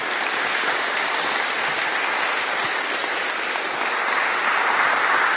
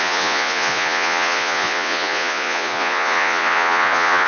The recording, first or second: first